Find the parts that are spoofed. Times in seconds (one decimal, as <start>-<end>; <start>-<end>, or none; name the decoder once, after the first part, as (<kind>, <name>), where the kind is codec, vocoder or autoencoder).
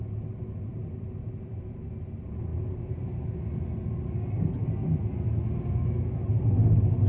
0.7-1.9 (vocoder, BigVGAN v2)